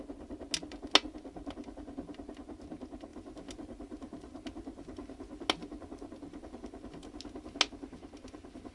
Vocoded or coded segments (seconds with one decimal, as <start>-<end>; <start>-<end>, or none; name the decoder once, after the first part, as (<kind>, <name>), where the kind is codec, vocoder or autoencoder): none